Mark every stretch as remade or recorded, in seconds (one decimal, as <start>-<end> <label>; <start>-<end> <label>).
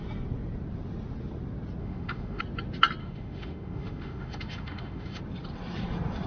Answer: 0.0-1.8 recorded; 1.8-2.4 remade; 2.4-3.0 recorded; 3.0-5.2 remade; 5.2-6.3 recorded